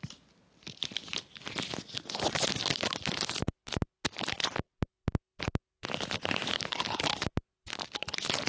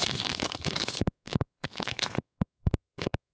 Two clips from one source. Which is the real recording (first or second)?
first